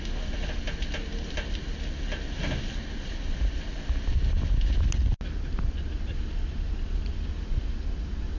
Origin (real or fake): real